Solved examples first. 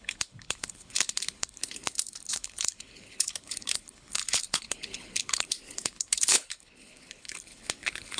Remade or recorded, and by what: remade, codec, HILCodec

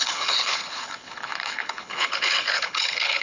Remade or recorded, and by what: remade, codec, HILCodec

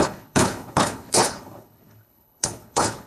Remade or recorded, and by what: remade, codec, HILCodec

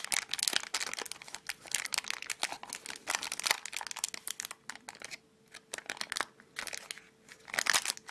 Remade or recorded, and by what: recorded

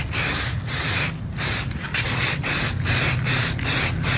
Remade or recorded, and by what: recorded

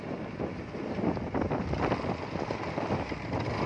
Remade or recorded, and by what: recorded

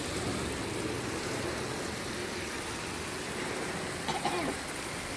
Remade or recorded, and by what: recorded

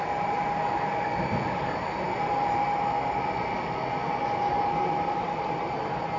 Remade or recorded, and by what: recorded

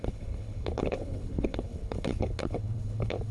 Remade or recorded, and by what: remade, codec, HILCodec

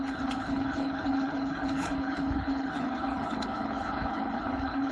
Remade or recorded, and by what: remade, codec, HILCodec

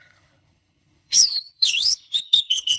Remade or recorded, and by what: remade, codec, HILCodec